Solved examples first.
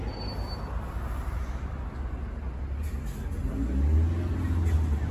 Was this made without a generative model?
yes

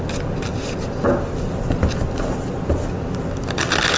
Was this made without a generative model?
yes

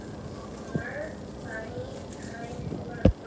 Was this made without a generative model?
yes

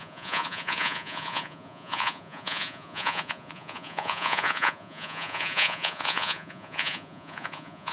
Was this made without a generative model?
no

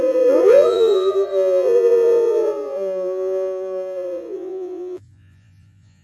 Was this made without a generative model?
no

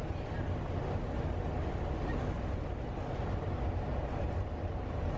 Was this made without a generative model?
yes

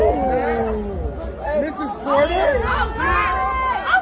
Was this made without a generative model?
yes